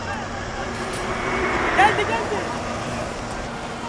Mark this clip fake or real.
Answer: real